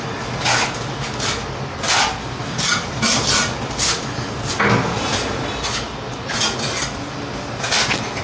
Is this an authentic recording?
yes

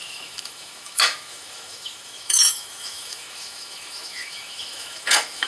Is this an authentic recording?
no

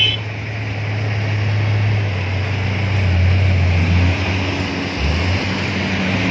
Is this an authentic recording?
yes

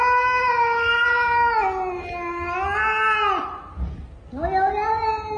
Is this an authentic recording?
yes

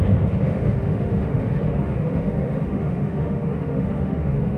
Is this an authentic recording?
no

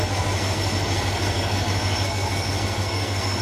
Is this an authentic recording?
no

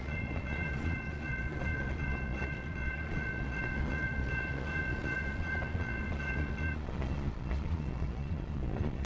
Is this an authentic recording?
no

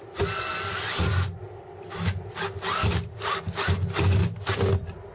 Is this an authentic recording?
yes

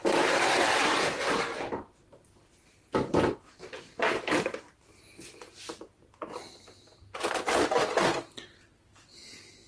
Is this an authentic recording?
yes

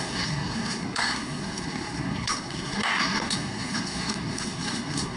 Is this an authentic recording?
no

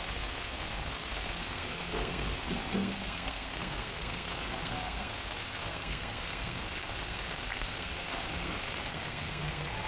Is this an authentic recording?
no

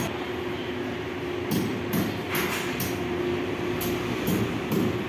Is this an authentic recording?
yes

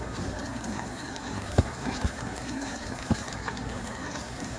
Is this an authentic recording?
no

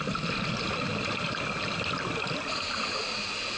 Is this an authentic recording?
yes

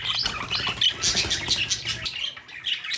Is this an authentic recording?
yes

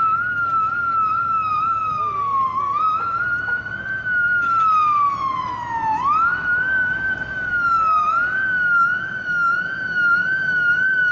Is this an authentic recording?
yes